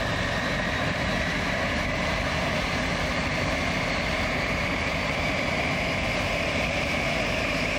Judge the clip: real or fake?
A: fake